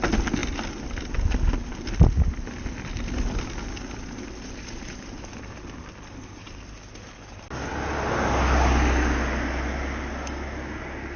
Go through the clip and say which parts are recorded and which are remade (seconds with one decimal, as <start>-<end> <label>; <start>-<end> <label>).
0.0-11.2 recorded